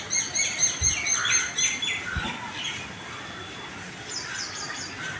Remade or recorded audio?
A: recorded